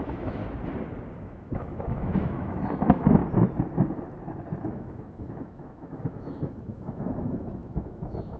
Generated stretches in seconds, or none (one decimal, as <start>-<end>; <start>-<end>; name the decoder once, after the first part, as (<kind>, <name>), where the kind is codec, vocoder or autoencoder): 0.0-0.4 (autoencoder, DAC-VAE); 1.2-3.2; 4.6-8.4